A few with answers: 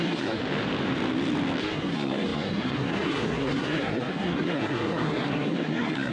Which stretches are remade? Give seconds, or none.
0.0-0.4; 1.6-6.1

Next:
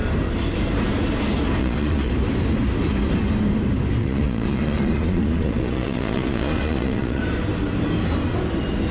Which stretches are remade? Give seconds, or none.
1.6-2.1; 4.0-7.2

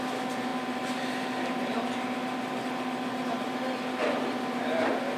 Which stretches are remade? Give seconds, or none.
none

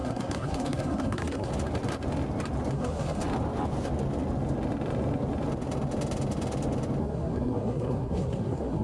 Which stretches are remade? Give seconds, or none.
0.0-1.5; 2.7-3.2; 7.0-8.8

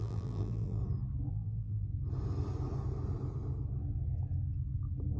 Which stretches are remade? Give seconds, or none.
0.0-0.8; 1.3-1.9

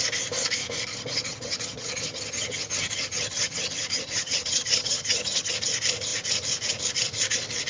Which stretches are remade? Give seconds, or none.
0.9-5.5

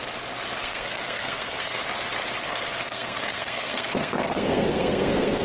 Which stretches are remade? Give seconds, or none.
0.6-1.8; 2.4-5.4